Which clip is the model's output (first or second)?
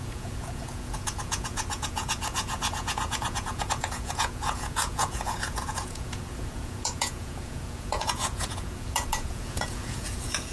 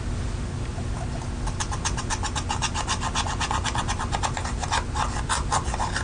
first